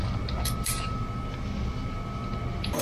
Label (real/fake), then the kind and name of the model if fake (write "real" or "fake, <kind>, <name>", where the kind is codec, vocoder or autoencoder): real